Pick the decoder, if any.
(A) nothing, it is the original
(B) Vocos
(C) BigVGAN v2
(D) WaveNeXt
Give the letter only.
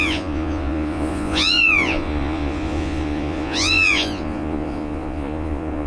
B